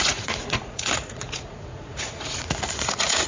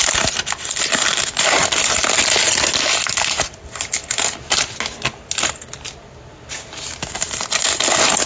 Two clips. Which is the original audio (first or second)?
second